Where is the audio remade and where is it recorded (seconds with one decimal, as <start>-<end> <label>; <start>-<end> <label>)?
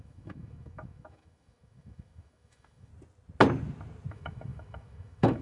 0.0-2.9 remade; 2.9-4.1 recorded; 4.1-5.4 remade